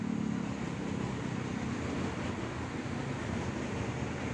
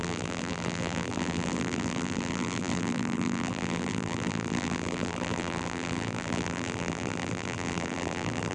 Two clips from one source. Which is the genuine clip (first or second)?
first